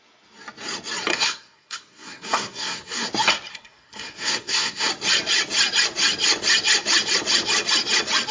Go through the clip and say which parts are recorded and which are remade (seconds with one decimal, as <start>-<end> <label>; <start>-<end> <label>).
0.0-1.1 recorded; 1.1-3.1 remade; 3.1-3.5 recorded; 3.5-4.9 remade; 4.9-8.3 recorded